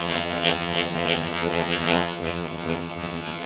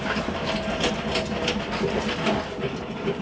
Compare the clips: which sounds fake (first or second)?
first